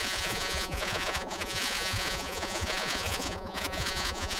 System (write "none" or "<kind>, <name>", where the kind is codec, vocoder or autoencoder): vocoder, Vocos